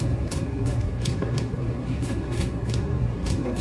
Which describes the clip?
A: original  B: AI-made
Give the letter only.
B